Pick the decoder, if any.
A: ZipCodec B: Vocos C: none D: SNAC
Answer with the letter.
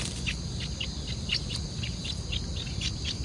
C